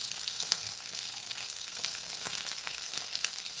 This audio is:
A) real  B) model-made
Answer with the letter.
B